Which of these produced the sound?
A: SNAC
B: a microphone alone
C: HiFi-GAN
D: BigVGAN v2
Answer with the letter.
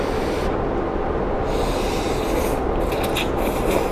B